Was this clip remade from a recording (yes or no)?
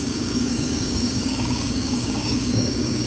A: yes